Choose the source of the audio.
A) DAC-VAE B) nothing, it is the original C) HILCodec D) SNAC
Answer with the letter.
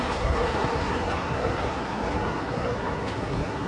D